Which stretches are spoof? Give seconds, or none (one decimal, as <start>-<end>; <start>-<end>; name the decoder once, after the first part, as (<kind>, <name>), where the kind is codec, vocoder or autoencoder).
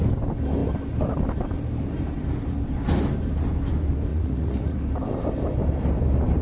4.1-4.8 (vocoder, Vocos)